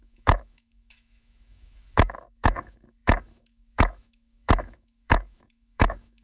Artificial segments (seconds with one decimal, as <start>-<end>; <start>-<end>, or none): 0.0-6.2